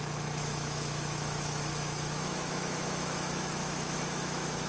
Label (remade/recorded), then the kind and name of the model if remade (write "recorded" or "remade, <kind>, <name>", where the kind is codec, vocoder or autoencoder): remade, autoencoder, DAC-VAE